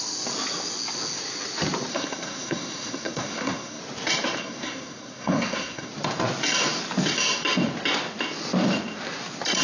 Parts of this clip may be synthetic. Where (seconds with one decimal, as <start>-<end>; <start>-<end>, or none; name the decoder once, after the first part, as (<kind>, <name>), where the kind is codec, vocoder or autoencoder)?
1.9-3.8 (codec, SNAC); 4.4-5.9